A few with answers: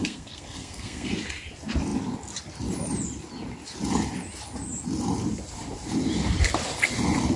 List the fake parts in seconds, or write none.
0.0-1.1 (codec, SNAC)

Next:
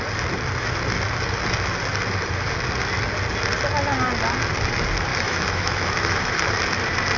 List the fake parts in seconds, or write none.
5.1-6.6 (autoencoder, DAC-VAE)

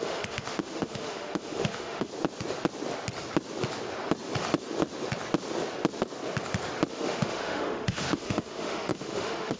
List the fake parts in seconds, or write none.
0.0-2.1 (autoencoder, DAC-VAE); 6.9-9.6

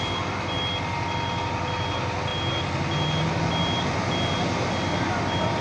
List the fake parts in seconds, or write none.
none

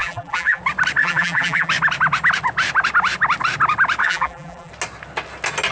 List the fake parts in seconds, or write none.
0.0-0.6 (vocoder, BigVGAN v2); 1.0-1.7; 4.0-4.7